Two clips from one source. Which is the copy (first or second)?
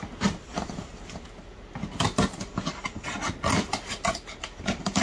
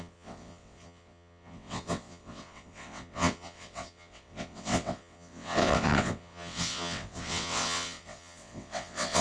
second